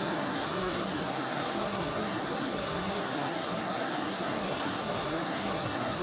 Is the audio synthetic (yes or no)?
yes